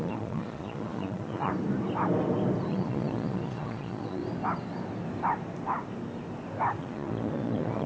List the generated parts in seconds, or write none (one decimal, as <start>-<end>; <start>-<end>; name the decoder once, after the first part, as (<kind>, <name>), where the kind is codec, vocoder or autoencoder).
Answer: 0.0-1.5 (vocoder, Vocos); 2.7-4.2; 6.8-7.9